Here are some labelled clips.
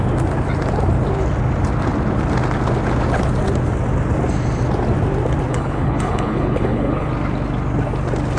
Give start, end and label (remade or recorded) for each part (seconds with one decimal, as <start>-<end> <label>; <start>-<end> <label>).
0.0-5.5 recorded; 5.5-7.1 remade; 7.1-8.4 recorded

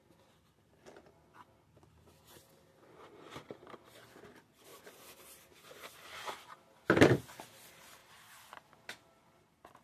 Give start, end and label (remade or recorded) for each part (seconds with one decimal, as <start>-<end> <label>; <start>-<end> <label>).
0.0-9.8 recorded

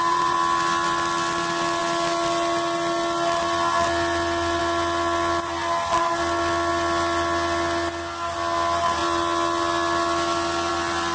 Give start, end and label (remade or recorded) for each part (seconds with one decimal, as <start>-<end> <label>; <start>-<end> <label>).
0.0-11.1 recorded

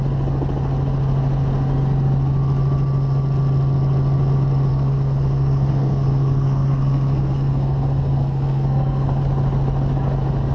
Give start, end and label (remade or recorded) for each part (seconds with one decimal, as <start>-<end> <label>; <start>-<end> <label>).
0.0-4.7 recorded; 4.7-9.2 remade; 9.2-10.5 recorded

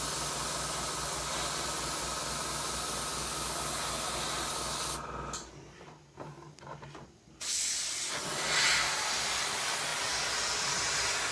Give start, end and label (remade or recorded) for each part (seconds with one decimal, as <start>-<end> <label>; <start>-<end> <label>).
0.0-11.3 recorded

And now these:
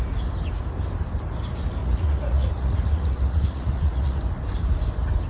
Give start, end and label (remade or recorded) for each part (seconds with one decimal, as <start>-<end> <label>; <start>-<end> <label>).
0.0-1.8 recorded; 1.8-4.2 remade; 4.2-5.3 recorded

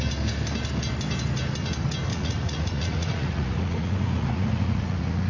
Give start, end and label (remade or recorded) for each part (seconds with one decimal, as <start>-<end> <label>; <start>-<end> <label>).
0.0-2.1 recorded; 2.1-5.3 remade